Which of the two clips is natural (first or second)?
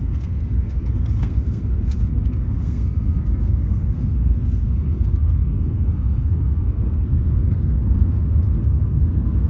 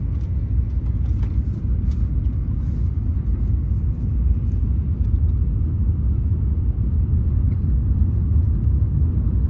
second